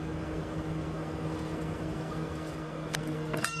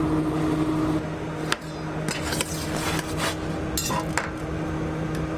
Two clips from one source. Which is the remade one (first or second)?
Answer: first